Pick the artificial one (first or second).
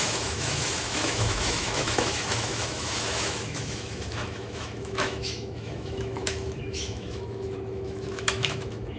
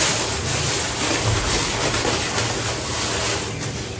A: first